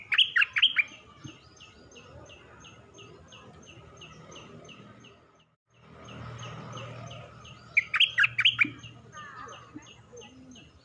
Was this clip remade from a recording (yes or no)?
no